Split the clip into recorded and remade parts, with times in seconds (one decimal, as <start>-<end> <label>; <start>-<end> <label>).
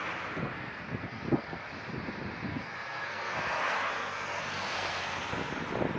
0.0-0.4 recorded; 0.4-1.7 remade; 1.7-2.5 recorded; 2.5-5.5 remade; 5.5-6.0 recorded